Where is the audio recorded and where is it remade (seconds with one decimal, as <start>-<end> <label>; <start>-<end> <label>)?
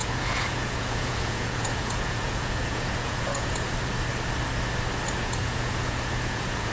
0.0-3.7 remade; 3.7-5.2 recorded; 5.2-6.7 remade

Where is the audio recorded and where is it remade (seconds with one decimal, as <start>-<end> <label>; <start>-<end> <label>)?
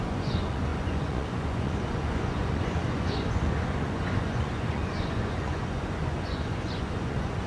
0.0-7.5 remade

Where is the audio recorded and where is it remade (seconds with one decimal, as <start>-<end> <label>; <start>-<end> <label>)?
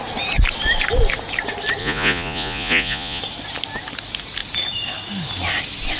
0.0-1.8 recorded; 1.8-3.2 remade; 3.2-6.0 recorded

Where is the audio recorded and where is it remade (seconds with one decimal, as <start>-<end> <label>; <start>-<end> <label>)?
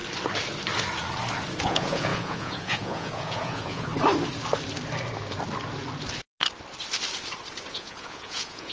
0.0-1.6 recorded; 1.6-3.9 remade; 3.9-7.7 recorded; 7.7-8.7 remade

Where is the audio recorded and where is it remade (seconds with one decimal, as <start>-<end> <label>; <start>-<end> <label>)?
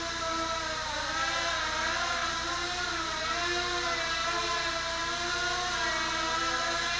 0.0-7.0 recorded